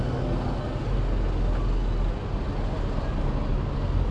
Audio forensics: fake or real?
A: real